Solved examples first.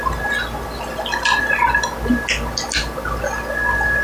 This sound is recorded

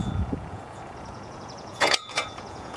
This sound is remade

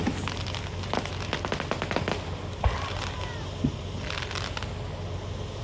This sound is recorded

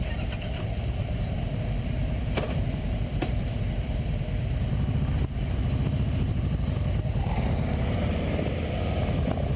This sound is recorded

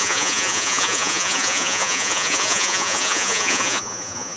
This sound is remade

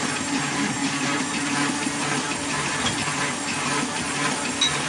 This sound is recorded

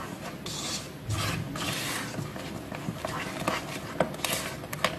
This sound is recorded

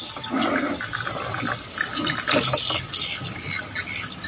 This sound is recorded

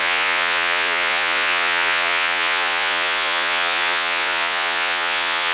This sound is remade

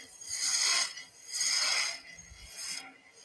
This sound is recorded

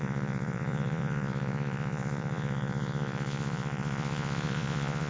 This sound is remade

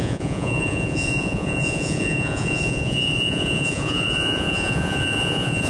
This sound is remade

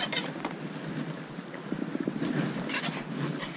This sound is recorded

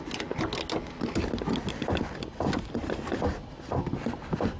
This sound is recorded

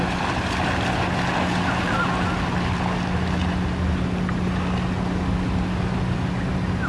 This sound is recorded